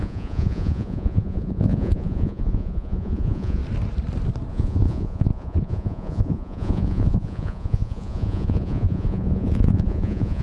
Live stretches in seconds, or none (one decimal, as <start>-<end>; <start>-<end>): 3.6-4.5